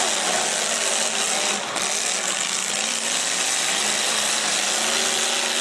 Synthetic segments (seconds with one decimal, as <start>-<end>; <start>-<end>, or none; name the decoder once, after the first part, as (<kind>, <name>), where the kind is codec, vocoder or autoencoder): 2.6-4.7 (vocoder, BigVGAN v2)